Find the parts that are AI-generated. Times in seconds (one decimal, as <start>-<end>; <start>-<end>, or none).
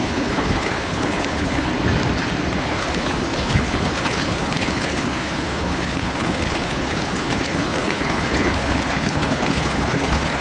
0.0-1.7; 2.6-10.4